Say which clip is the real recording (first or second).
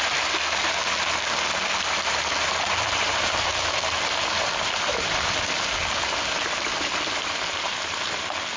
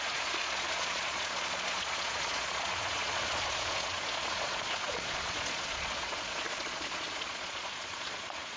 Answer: first